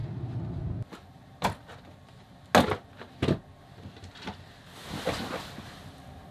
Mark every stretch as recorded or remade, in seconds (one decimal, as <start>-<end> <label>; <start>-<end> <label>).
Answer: 0.0-6.3 recorded